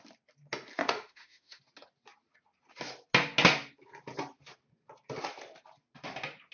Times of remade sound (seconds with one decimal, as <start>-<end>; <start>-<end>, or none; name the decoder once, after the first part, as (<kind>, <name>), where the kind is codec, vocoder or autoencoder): 0.8-1.6 (autoencoder, DAC-VAE)